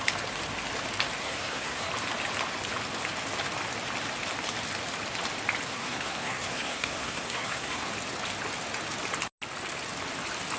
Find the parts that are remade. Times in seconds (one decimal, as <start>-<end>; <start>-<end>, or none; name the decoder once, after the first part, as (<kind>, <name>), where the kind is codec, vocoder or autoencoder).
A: 1.2-1.9 (codec, SNAC); 5.7-7.9